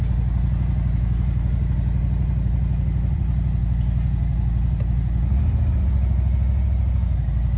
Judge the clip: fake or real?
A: real